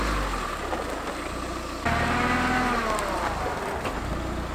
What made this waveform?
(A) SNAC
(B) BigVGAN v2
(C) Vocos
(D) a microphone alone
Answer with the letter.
D